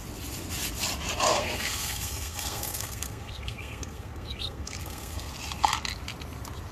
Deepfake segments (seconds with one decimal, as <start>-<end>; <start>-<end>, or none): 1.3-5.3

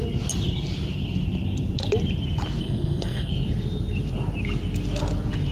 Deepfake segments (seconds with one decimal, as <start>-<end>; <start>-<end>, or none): 2.6-3.3

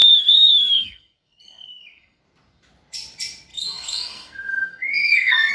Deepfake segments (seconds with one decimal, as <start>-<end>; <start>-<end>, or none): 0.0-2.2; 3.5-5.5